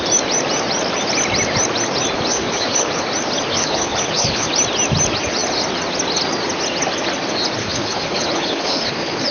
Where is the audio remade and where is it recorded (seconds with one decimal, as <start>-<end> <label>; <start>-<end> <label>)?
0.0-2.3 recorded; 2.3-3.0 remade; 3.0-3.5 recorded; 3.5-4.5 remade; 4.5-7.6 recorded; 7.6-9.3 remade